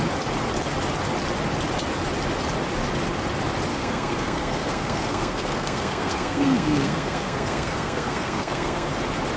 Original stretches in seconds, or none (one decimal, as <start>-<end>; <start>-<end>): 0.0-3.7; 8.9-9.4